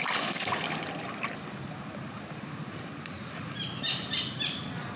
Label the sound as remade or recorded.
recorded